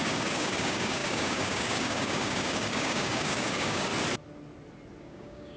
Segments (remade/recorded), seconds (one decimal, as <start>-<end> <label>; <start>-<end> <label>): 0.0-3.9 remade; 3.9-5.0 recorded; 5.0-5.6 remade